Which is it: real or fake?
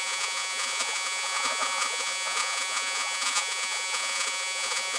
fake